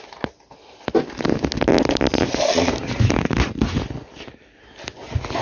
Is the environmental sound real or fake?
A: real